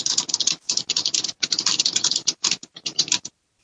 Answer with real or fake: fake